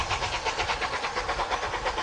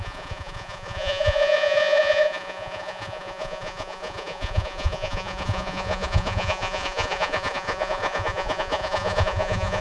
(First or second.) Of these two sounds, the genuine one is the first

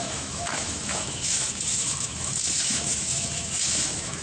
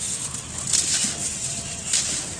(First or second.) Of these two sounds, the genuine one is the second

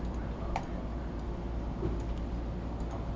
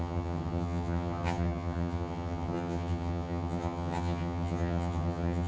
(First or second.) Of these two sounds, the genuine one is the first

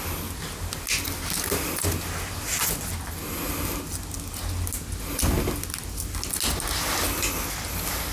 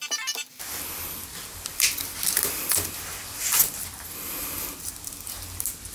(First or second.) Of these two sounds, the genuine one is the first